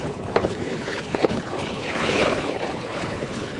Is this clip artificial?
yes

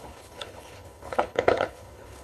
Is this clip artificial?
yes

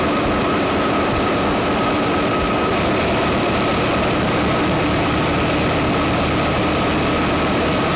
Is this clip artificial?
no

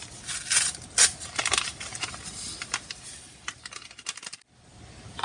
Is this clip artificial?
no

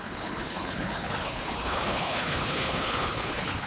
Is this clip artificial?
yes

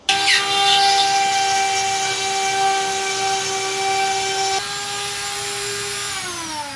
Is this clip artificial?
no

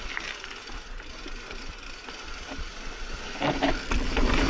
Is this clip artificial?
no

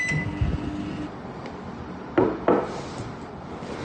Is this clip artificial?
no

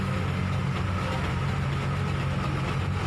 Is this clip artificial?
no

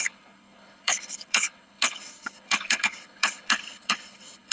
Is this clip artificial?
yes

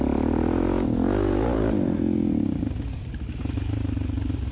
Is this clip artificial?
no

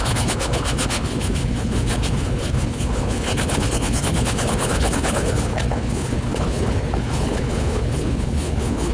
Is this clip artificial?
yes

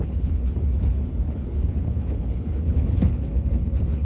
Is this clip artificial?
yes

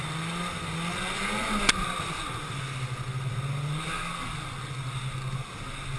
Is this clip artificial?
no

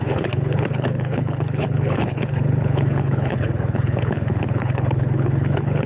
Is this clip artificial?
yes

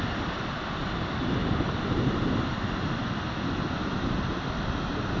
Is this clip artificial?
no